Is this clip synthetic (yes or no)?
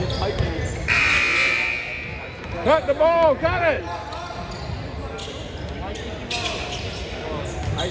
no